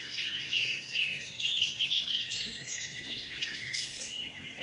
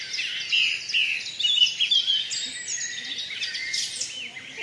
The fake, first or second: first